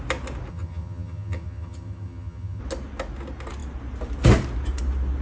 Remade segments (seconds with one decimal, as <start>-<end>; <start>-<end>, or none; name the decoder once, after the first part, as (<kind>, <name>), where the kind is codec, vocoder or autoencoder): 0.5-2.6 (vocoder, HiFi-GAN)